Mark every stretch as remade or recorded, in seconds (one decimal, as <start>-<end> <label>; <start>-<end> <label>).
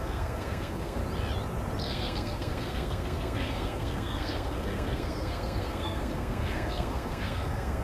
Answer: 0.0-1.0 remade; 1.0-1.8 recorded; 1.8-7.8 remade